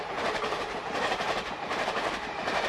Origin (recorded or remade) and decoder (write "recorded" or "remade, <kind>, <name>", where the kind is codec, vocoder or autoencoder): remade, vocoder, BigVGAN v2